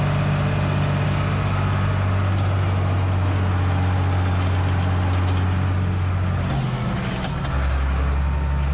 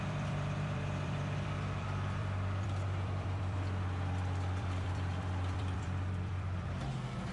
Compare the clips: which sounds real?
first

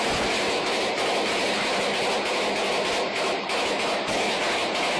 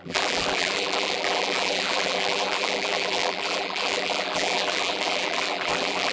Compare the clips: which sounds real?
first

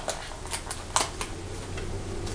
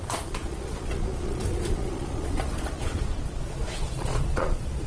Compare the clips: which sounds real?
first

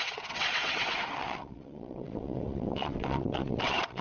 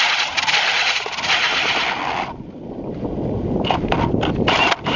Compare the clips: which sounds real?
second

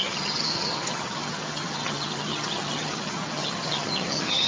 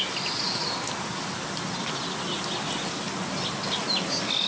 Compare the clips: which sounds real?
second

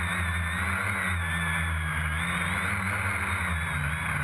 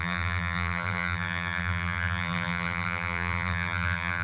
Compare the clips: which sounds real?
first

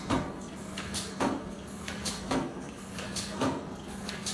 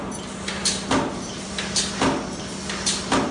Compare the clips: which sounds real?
second